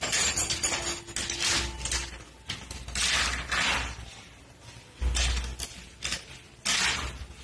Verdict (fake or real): real